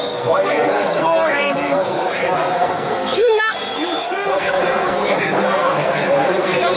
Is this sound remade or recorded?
remade